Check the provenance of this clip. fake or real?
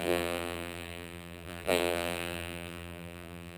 fake